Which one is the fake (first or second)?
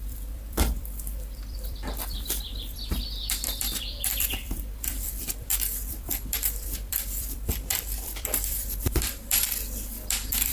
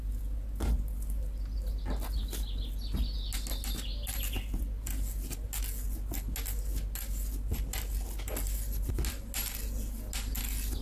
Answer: first